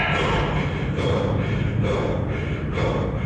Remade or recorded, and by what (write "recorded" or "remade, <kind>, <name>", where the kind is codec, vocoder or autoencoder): recorded